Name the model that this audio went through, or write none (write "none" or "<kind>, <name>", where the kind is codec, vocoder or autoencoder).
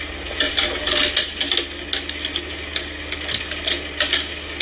none